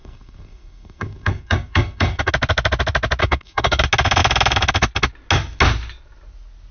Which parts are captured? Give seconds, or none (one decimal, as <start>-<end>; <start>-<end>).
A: 2.3-3.2; 3.8-6.7